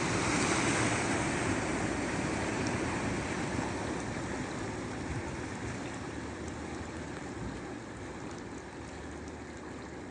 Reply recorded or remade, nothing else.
recorded